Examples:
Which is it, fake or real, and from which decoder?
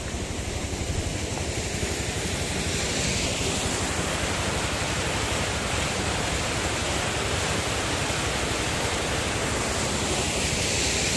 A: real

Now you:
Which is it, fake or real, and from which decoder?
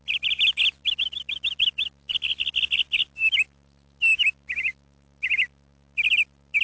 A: real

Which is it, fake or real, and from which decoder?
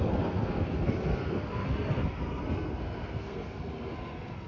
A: fake, codec, SNAC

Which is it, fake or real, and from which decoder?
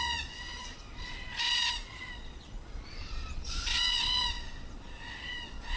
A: fake, vocoder, Vocos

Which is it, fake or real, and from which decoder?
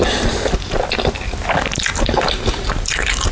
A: real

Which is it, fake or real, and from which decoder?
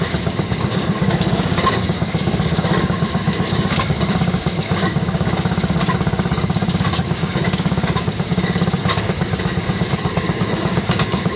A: fake, codec, DAC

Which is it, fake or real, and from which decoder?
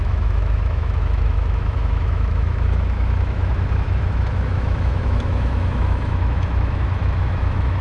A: fake, autoencoder, DAC-VAE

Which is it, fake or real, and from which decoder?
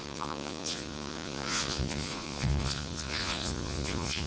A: fake, vocoder, Vocos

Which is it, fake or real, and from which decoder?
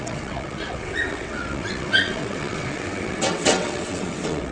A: fake, vocoder, WaveNeXt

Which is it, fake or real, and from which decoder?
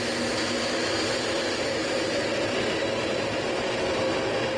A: real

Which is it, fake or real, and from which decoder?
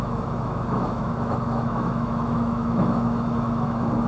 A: fake, autoencoder, DAC-VAE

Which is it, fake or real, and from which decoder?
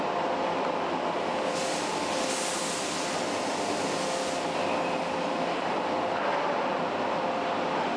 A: real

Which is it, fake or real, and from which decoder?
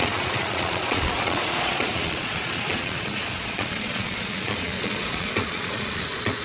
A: fake, vocoder, Vocos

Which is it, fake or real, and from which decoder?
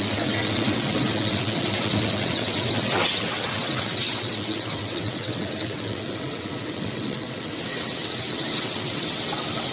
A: fake, vocoder, WaveNeXt